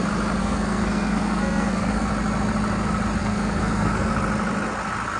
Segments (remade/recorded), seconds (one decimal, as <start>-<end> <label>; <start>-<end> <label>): 0.0-0.4 recorded; 0.4-2.1 remade; 2.1-3.2 recorded; 3.2-4.1 remade; 4.1-5.2 recorded